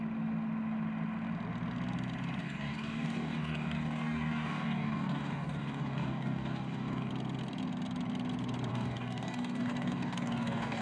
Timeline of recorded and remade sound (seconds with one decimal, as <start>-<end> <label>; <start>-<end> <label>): 0.0-2.4 recorded; 2.4-7.1 remade; 7.1-8.7 recorded; 8.7-10.8 remade